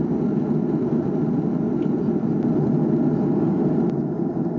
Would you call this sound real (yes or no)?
yes